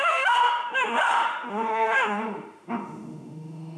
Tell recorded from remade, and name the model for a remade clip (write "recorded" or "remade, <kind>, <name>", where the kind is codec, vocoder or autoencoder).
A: remade, autoencoder, DAC-VAE